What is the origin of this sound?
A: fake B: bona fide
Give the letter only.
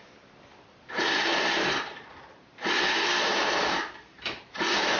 A